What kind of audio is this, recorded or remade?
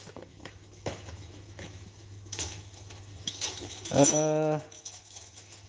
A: remade